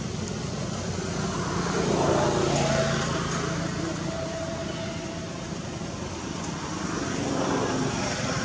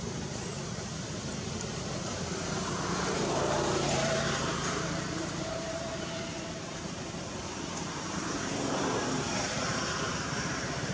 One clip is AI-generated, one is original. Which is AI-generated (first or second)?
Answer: second